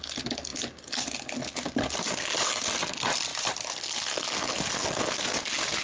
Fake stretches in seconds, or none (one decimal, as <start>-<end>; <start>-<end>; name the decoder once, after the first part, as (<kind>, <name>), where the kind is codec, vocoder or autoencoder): none